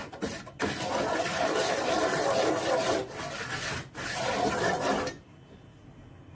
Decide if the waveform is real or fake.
real